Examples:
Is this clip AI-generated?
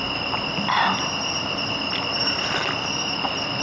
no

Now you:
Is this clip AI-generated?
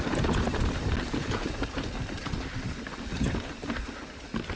no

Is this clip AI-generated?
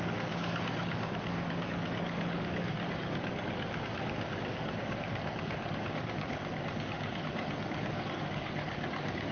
yes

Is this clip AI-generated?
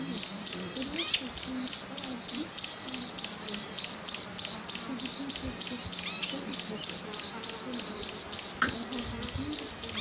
no